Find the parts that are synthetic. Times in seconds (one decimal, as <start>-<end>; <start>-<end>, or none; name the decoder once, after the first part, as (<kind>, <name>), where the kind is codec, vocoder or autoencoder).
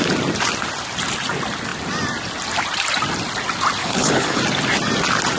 3.8-4.4 (codec, HILCodec)